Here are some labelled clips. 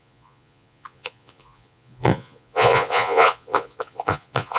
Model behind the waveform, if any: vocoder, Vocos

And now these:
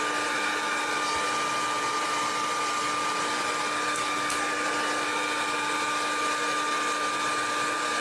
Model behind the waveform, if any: none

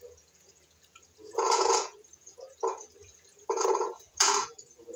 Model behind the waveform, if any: vocoder, Vocos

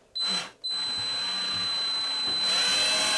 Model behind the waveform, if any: none